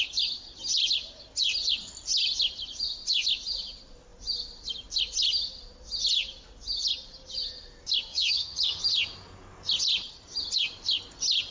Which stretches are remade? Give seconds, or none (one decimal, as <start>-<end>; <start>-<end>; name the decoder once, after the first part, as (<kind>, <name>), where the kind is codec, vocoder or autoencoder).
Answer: 8.1-8.8 (vocoder, HiFi-GAN)